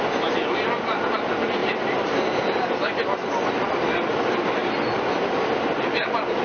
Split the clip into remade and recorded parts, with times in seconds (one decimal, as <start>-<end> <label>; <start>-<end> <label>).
0.0-6.4 recorded